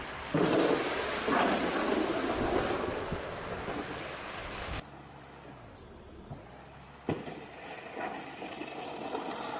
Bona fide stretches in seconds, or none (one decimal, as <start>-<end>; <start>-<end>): 0.0-9.6